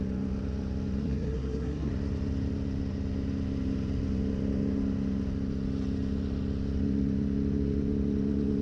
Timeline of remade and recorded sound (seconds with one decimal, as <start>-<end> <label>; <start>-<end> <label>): 0.0-1.0 recorded; 1.0-1.9 remade; 1.9-8.6 recorded

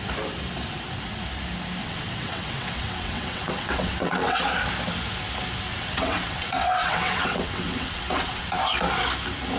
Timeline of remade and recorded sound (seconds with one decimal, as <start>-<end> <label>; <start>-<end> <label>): 0.0-1.8 recorded; 1.8-4.4 remade; 4.4-5.7 recorded; 5.7-8.4 remade; 8.4-9.6 recorded

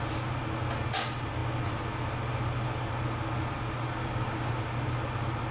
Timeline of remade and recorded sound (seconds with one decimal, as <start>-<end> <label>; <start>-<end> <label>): 0.0-4.0 recorded; 4.0-4.5 remade; 4.5-5.5 recorded

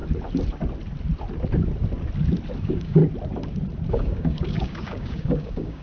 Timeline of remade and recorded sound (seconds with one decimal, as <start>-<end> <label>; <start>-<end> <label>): 0.0-2.6 recorded; 2.6-3.0 remade; 3.0-3.9 recorded; 3.9-5.8 remade

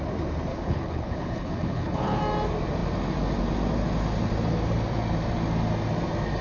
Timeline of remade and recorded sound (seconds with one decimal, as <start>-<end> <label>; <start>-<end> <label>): 0.0-0.5 recorded; 0.5-2.2 remade; 2.2-6.4 recorded